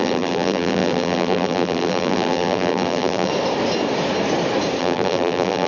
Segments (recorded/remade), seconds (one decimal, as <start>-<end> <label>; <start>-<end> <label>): 0.0-3.3 remade; 3.3-4.8 recorded; 4.8-5.7 remade